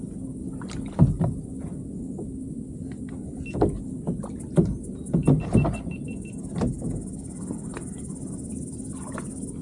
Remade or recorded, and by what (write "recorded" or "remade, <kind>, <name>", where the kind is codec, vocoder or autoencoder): recorded